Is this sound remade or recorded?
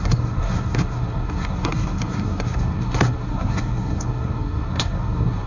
remade